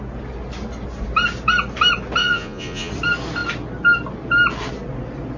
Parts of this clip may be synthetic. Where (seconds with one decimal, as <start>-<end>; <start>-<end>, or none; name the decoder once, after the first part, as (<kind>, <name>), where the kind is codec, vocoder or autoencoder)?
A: 2.2-2.9 (vocoder, Vocos)